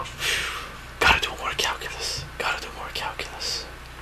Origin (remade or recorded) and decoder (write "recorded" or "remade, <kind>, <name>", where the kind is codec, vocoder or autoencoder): recorded